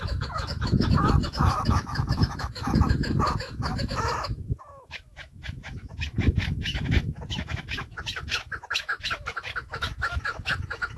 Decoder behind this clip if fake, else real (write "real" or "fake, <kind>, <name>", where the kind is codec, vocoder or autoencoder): fake, autoencoder, DAC-VAE